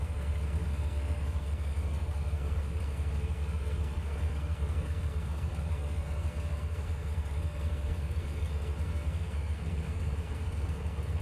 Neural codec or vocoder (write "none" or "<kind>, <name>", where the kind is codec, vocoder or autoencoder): codec, SNAC